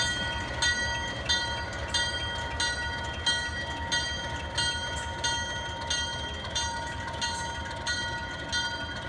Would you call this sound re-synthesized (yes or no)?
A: no